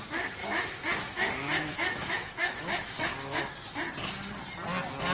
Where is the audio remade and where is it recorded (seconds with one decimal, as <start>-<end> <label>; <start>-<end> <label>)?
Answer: 0.0-0.4 recorded; 0.4-3.5 remade; 3.5-5.1 recorded